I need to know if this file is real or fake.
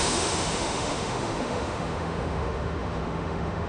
fake